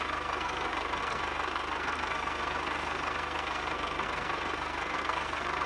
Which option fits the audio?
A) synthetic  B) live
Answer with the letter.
A